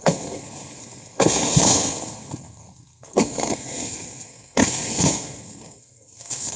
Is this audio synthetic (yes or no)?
yes